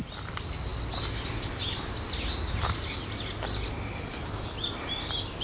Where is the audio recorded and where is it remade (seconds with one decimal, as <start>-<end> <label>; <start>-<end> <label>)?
0.0-5.4 recorded